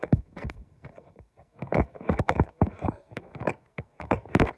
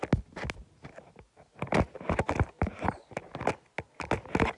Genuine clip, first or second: second